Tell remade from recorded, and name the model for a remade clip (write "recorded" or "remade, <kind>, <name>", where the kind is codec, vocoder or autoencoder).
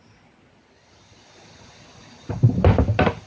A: recorded